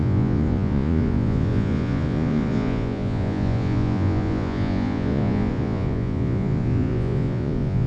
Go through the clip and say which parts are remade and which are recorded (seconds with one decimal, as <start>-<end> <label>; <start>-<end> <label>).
0.0-7.9 remade